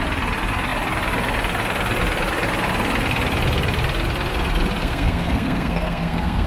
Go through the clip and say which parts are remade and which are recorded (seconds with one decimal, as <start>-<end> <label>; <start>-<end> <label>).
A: 0.0-4.8 recorded; 4.8-6.5 remade

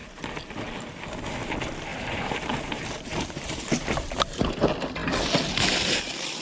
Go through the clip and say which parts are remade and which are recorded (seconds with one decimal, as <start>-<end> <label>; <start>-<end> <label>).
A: 0.0-1.9 recorded; 1.9-4.5 remade; 4.5-6.4 recorded